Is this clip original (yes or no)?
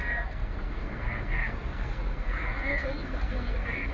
no